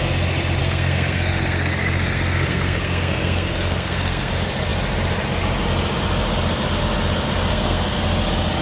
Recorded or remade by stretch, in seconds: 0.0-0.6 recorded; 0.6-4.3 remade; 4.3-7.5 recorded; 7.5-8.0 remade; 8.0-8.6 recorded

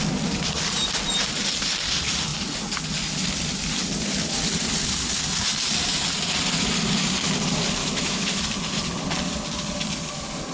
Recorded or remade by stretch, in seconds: 0.0-7.8 recorded; 7.8-8.4 remade; 8.4-10.5 recorded

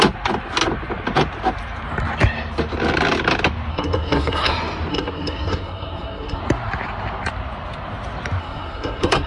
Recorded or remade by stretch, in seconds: 0.0-3.7 recorded; 3.7-4.5 remade; 4.5-4.9 recorded; 4.9-6.4 remade; 6.4-8.4 recorded; 8.4-9.3 remade

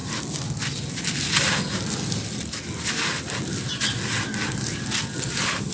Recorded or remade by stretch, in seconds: 0.0-5.7 recorded

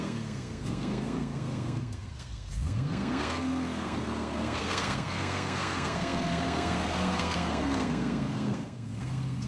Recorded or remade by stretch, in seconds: 0.0-9.5 remade

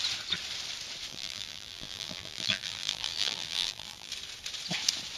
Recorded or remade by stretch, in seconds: 0.0-1.1 recorded; 1.1-4.1 remade; 4.1-5.2 recorded

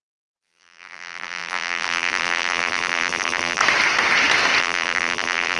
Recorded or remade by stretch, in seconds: 0.0-3.6 remade; 3.6-4.6 recorded; 4.6-5.6 remade